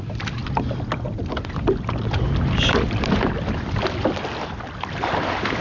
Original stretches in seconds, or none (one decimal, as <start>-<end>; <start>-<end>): 0.0-5.6